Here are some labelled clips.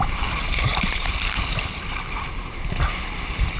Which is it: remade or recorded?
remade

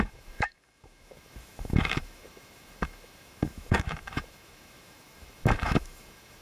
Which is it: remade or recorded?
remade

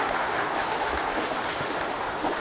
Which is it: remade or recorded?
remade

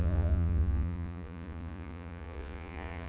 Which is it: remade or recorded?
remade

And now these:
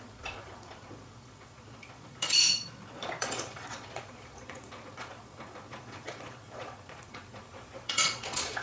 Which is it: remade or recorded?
remade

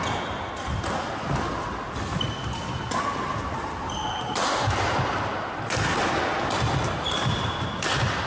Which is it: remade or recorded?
recorded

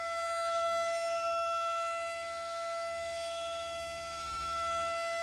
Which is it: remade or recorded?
remade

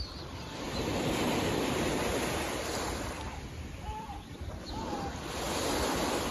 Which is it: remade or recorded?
recorded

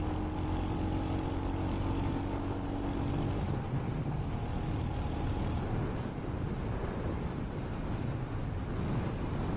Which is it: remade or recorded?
recorded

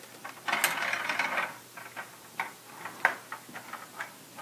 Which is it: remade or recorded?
recorded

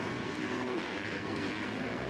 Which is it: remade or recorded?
remade